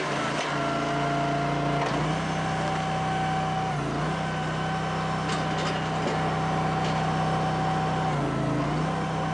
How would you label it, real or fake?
real